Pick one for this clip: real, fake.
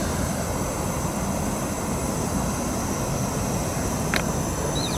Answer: real